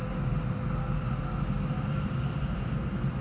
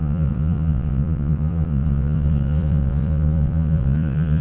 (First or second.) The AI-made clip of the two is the second